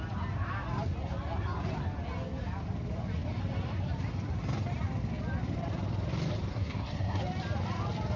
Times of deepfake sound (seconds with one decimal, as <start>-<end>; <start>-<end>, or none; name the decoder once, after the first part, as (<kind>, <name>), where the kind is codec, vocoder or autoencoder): 6.5-7.2 (codec, SNAC)